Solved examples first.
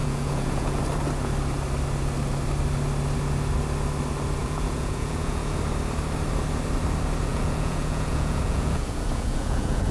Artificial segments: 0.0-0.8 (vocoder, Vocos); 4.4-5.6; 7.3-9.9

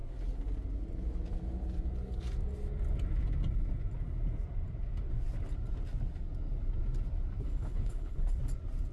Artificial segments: 7.4-8.4 (codec, HILCodec)